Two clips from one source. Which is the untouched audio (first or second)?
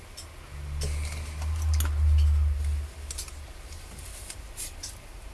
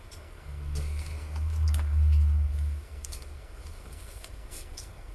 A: first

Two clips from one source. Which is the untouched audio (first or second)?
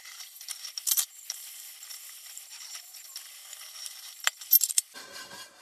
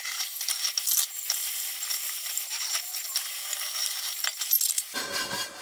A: second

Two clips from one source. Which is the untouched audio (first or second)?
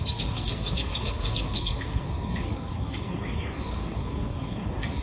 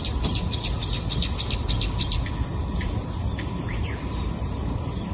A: second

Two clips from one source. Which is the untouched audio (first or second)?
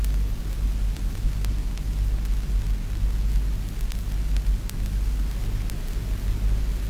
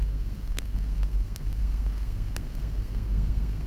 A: first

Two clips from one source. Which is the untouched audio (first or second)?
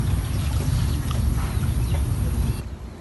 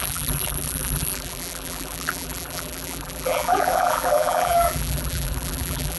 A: first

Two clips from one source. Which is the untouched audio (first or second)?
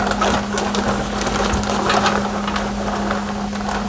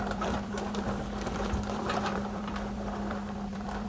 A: first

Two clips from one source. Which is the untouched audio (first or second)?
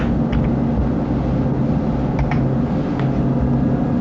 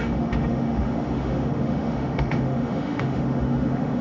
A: first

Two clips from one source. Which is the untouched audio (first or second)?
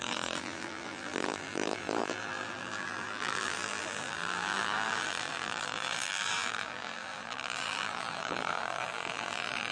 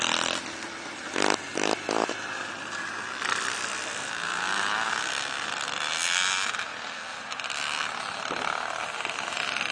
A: second